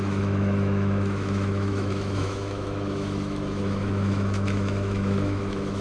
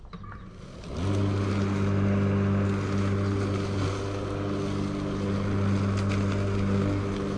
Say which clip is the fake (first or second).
first